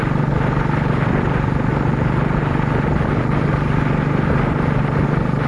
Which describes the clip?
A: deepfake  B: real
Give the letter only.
B